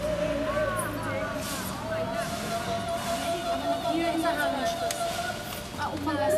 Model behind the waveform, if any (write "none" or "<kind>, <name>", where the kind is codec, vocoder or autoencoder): none